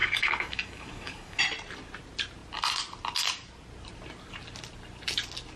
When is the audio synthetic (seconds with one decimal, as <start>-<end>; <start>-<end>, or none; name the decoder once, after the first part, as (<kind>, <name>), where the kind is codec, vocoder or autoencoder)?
0.0-1.4 (codec, DAC)